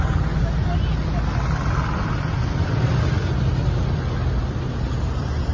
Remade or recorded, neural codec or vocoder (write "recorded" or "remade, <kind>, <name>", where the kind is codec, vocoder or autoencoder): recorded